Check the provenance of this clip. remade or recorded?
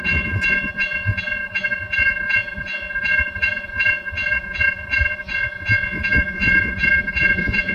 remade